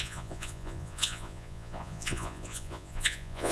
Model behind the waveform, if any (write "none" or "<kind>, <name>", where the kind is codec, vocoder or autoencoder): vocoder, Vocos